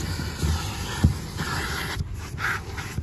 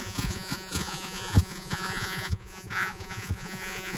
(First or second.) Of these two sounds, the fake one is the second